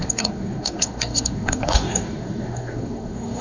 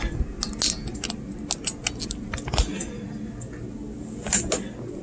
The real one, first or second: second